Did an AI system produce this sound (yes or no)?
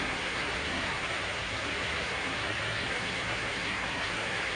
yes